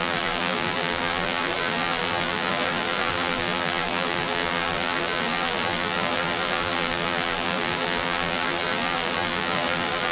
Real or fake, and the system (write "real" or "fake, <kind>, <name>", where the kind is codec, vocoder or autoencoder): fake, vocoder, BigVGAN v2